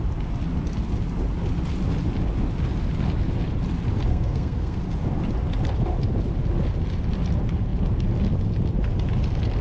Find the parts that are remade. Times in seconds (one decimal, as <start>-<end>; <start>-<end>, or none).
4.1-4.8